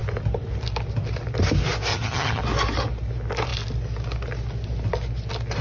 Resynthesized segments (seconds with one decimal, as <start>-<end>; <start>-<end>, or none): 1.9-2.4